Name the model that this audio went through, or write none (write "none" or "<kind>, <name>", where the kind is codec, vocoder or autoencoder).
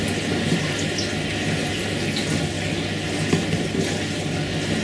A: none